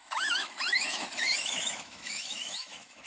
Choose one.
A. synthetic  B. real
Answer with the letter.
A